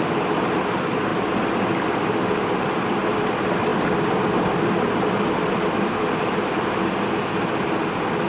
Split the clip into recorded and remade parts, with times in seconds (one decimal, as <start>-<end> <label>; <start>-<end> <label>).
0.0-8.3 recorded